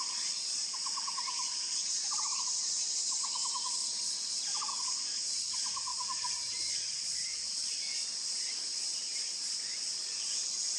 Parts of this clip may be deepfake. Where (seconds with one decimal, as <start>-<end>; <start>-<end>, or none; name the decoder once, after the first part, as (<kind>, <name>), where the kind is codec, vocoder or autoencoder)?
3.8-4.7 (vocoder, BigVGAN v2)